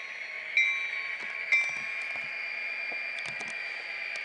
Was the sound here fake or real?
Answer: real